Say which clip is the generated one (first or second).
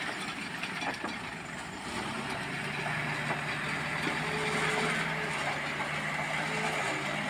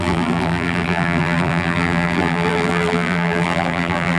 second